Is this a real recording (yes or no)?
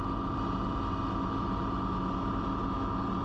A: yes